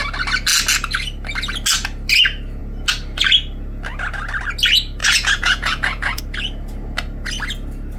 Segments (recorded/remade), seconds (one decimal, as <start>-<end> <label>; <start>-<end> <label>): 0.0-5.0 recorded; 5.0-6.2 remade; 6.2-8.0 recorded